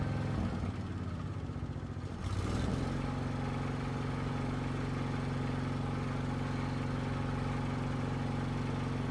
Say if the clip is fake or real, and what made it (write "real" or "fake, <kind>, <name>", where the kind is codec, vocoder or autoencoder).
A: real